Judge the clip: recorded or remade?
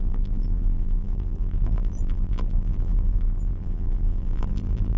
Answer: remade